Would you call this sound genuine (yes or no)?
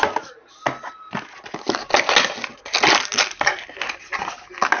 yes